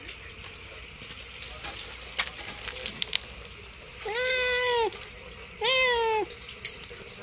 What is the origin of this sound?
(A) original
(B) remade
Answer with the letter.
A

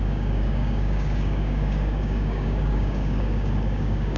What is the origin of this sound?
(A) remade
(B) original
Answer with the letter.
A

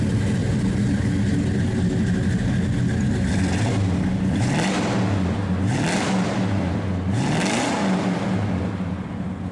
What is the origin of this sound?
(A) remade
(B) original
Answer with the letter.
B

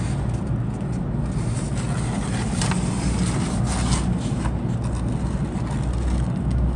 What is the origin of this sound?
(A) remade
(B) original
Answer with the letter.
B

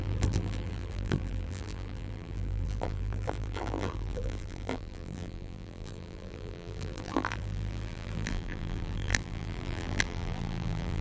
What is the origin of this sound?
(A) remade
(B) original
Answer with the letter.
A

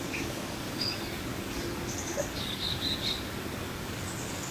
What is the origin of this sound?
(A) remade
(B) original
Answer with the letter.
A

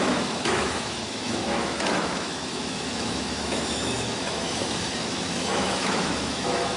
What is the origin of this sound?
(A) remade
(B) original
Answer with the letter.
A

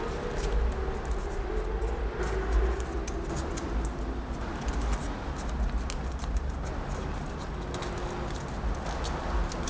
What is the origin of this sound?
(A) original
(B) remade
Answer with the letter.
A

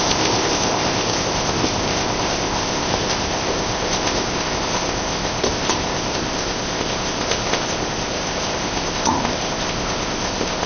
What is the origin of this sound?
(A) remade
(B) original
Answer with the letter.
A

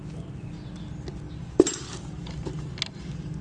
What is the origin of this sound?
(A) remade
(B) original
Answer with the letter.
B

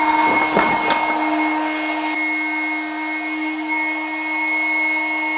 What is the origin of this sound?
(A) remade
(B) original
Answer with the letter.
B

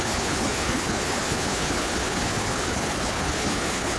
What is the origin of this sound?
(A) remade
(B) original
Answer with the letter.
A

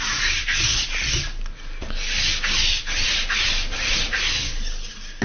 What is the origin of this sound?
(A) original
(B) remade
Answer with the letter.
A